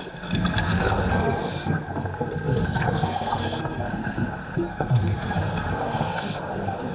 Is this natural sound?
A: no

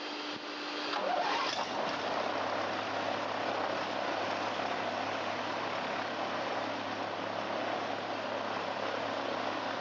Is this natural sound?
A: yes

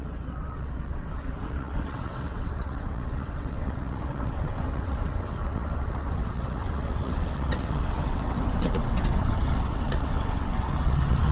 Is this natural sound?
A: no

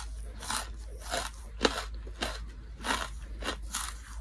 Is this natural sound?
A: yes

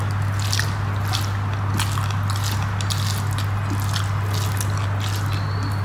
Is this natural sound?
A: yes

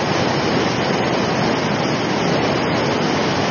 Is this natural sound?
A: yes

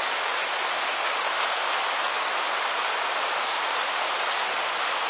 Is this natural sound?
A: yes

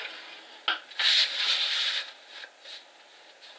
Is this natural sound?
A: yes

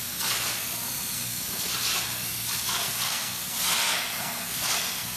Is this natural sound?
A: no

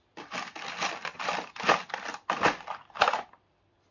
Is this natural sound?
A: yes